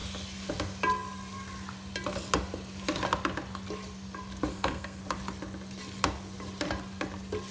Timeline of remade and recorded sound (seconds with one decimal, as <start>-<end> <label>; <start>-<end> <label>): 0.0-4.5 recorded; 4.5-5.0 remade; 5.0-7.5 recorded